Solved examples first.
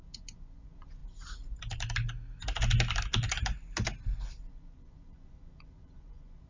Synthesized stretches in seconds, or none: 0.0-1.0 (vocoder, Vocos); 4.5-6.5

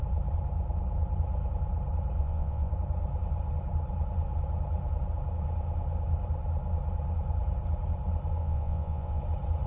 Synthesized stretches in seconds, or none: 2.2-2.7 (vocoder, Vocos); 8.4-9.2

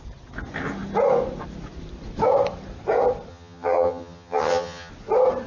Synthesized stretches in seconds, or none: 3.3-4.9 (vocoder, HiFi-GAN)

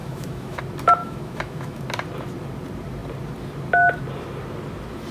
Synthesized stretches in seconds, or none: 0.0-0.6 (autoencoder, DAC-VAE); 1.0-1.8

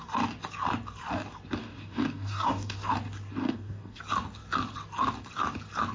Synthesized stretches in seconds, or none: 1.6-2.9 (codec, DAC); 3.4-4.0

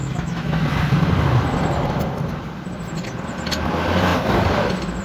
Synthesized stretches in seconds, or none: 0.0-0.6 (autoencoder, DAC-VAE)